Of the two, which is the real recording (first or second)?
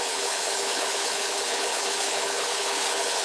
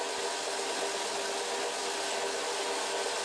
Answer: second